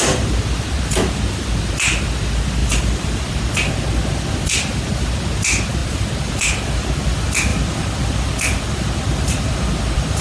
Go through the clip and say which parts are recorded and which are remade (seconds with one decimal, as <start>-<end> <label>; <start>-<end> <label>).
0.0-2.6 recorded; 2.6-3.3 remade; 3.3-5.8 recorded; 5.8-6.3 remade; 6.3-7.5 recorded; 7.5-10.2 remade